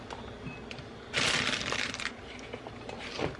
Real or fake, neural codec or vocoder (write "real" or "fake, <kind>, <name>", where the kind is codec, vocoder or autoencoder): real